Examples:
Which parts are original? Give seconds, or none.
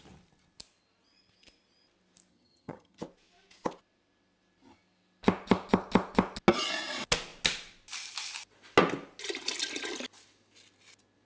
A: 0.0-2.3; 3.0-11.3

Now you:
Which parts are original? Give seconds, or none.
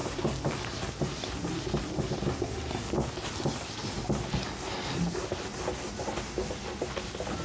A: 0.0-7.4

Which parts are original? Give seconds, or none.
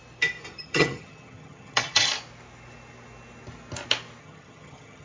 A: 0.0-0.6; 2.1-4.2